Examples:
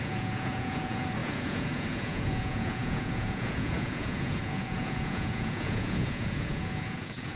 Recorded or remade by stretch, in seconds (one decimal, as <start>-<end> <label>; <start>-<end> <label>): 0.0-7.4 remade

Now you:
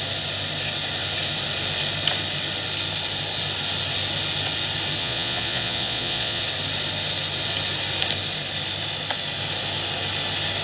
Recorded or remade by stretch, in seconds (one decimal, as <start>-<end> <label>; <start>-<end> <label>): 0.0-5.0 recorded; 5.0-6.4 remade; 6.4-10.6 recorded

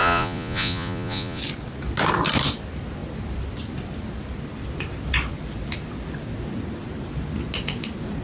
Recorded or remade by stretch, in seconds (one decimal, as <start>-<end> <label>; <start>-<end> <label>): 0.0-1.4 remade; 1.4-8.2 recorded

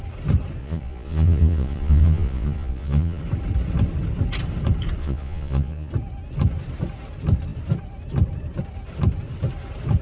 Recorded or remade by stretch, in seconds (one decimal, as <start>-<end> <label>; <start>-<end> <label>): 0.0-0.6 recorded; 0.6-3.2 remade; 3.2-5.0 recorded; 5.0-5.9 remade; 5.9-10.0 recorded

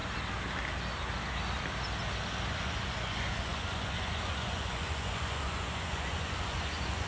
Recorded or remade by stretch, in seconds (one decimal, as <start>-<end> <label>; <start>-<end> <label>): 0.0-2.5 recorded; 2.5-7.1 remade